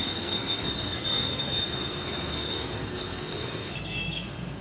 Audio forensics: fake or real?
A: fake